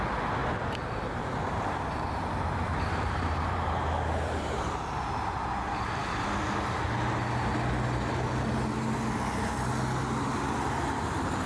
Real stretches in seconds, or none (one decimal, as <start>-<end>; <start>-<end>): 0.0-0.4; 5.0-11.5